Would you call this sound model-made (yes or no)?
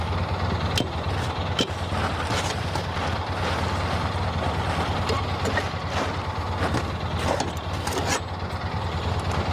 no